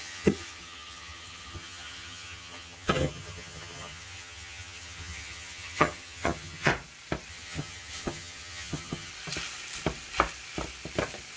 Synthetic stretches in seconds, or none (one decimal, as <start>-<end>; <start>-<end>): 0.0-6.7; 7.3-9.1